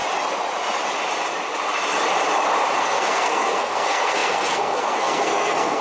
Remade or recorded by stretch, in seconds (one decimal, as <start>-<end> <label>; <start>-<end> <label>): 0.0-2.8 recorded; 2.8-5.8 remade